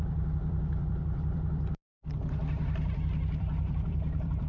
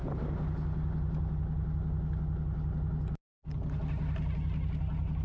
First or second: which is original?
second